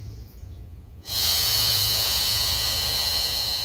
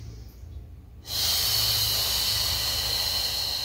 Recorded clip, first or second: second